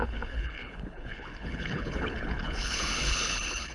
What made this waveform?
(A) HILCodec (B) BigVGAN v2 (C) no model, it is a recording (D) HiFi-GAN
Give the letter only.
A